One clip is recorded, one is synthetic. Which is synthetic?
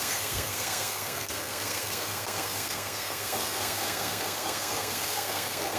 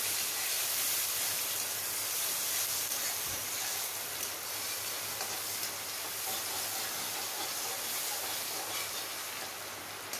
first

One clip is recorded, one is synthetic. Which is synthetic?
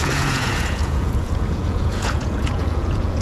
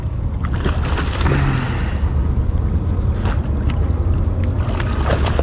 first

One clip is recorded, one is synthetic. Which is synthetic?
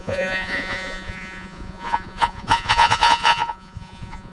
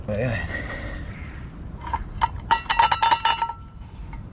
first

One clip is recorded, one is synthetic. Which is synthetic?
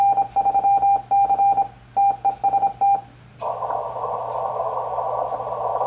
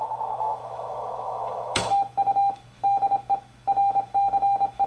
second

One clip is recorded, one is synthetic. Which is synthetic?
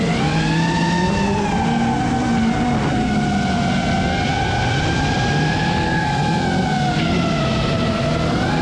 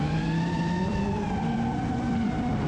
second